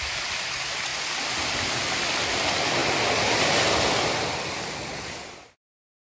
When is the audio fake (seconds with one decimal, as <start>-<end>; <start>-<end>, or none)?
none